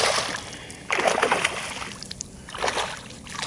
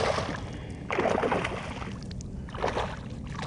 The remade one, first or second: first